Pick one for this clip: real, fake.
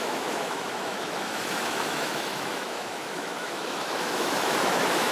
fake